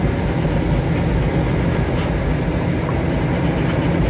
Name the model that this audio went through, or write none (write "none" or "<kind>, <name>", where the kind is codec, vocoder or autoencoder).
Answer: none